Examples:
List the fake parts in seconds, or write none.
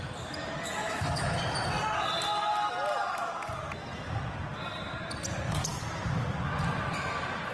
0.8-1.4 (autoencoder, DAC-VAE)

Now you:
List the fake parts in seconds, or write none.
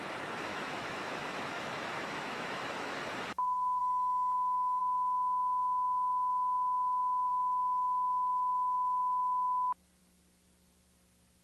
0.5-3.0 (autoencoder, DAC-VAE); 3.8-4.8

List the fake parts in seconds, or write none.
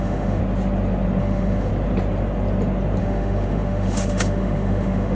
0.0-0.4 (autoencoder, DAC-VAE); 1.2-1.7; 3.0-5.1